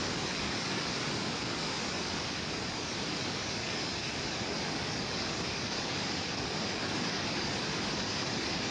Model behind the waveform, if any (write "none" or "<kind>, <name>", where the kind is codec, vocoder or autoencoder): codec, DAC